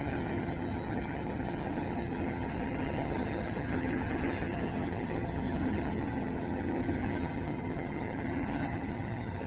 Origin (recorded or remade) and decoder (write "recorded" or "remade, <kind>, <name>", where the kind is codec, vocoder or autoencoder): remade, vocoder, HiFi-GAN